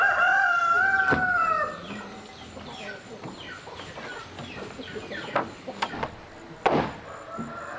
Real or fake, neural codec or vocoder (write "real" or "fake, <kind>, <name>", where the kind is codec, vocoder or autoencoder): real